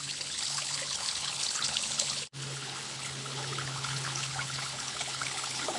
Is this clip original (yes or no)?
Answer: no